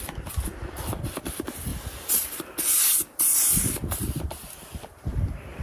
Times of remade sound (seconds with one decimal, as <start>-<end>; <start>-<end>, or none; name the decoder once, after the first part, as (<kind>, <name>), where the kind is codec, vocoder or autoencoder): 0.0-1.7 (vocoder, BigVGAN v2); 2.8-5.6